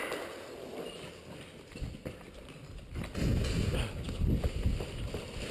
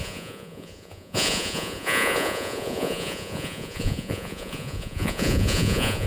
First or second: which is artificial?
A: second